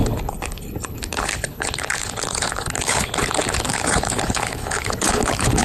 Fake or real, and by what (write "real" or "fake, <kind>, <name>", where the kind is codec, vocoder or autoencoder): fake, codec, HILCodec